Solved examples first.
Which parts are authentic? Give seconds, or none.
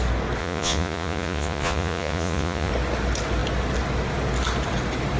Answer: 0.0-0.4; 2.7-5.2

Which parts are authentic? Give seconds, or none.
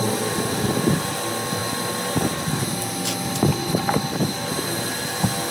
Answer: 0.0-5.5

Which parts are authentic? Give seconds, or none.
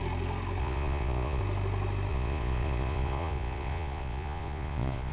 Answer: 0.0-0.6; 1.4-2.1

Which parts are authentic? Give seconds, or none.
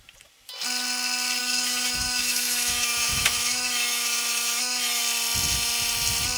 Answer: 0.0-1.4; 5.0-6.4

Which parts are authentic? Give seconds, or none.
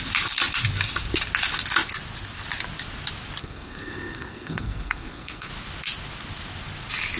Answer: 0.0-3.4; 5.5-7.2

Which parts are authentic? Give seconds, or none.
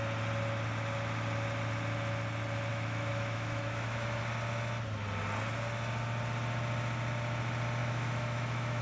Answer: 0.0-2.7; 4.2-7.8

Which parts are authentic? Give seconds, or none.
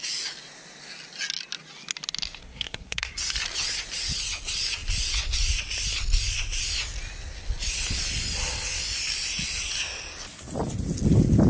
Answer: 0.0-2.4; 3.1-11.5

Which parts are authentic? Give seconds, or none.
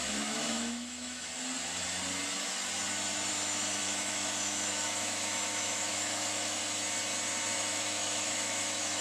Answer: 1.3-3.3; 6.6-7.5